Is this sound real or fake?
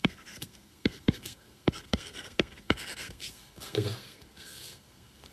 fake